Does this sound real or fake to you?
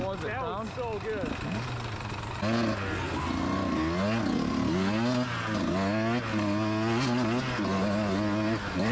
real